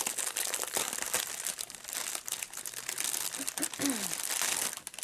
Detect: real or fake real